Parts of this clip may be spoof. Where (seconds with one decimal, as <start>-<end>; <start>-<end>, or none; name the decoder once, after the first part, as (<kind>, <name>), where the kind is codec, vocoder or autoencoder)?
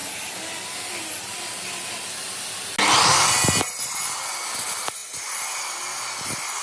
none